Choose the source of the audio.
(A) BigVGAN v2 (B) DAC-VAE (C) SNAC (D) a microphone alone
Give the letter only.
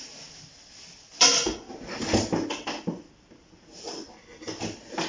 D